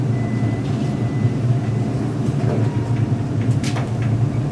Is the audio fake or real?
fake